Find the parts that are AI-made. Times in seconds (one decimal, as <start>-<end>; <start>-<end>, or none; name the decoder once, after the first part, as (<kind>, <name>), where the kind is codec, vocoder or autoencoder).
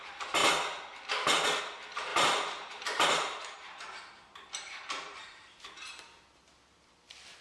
2.1-6.5 (vocoder, BigVGAN v2)